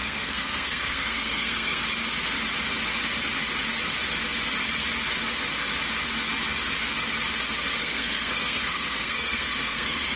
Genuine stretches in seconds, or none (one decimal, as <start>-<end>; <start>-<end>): 1.8-7.8